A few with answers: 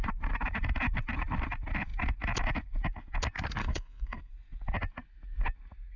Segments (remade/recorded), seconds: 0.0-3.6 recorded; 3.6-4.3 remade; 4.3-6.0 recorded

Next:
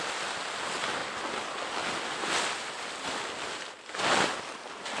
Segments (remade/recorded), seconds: 0.0-5.0 recorded

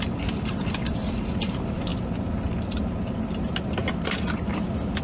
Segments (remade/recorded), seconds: 0.0-1.9 remade; 1.9-2.6 recorded; 2.6-3.8 remade; 3.8-4.5 recorded; 4.5-5.0 remade

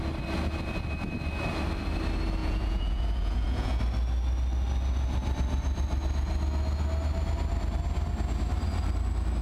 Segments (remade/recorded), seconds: 0.0-2.4 recorded; 2.4-3.8 remade; 3.8-9.4 recorded